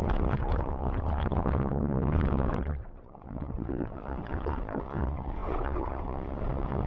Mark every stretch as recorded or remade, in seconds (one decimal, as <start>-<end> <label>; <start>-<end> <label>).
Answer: 0.0-6.9 remade